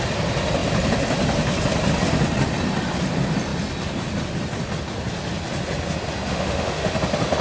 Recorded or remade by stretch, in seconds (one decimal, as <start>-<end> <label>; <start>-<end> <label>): 0.0-6.3 recorded; 6.3-6.9 remade; 6.9-7.4 recorded